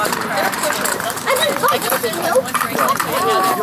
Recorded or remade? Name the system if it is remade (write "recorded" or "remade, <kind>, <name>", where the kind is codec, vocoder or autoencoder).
remade, vocoder, BigVGAN v2